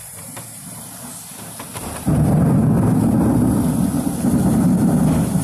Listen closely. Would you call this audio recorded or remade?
recorded